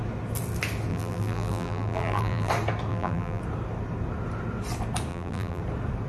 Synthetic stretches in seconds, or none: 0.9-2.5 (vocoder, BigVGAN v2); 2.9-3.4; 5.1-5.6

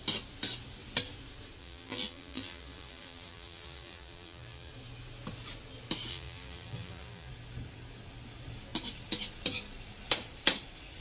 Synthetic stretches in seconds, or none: 1.6-4.7 (vocoder, BigVGAN v2); 6.1-7.3

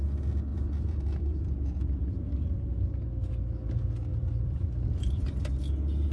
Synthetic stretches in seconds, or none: 0.5-3.0 (vocoder, BigVGAN v2); 4.1-5.3

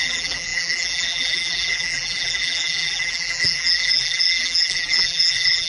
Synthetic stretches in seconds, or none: 0.0-5.7 (vocoder, BigVGAN v2)

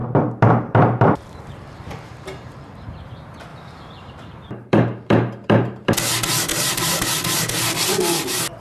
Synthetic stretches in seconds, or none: 0.0-2.7 (vocoder, BigVGAN v2); 3.5-5.9; 6.5-7.1

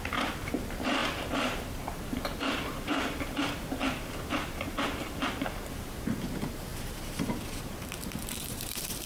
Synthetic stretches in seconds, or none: 0.0-9.1 (vocoder, BigVGAN v2)

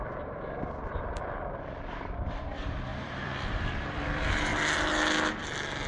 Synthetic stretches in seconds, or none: 0.0-4.5 (vocoder, BigVGAN v2); 5.4-5.9

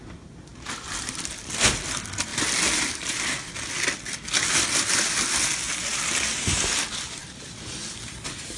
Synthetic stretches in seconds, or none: 0.0-8.6 (vocoder, BigVGAN v2)